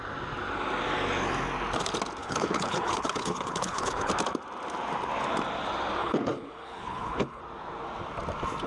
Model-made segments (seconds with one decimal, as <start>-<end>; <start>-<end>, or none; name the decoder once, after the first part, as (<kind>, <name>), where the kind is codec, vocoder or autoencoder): 2.2-4.1 (codec, HILCodec); 6.0-7.4